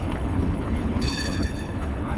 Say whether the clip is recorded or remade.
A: remade